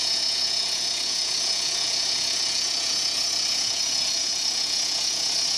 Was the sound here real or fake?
fake